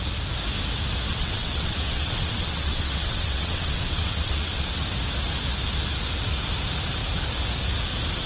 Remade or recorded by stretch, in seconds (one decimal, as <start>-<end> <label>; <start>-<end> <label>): 0.0-1.1 recorded; 1.1-4.8 remade; 4.8-8.3 recorded